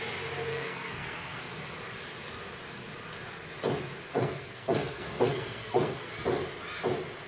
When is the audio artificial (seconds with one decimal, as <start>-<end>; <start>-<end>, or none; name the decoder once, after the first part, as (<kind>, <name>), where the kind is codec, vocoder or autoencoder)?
0.5-1.4 (codec, SNAC); 4.1-6.1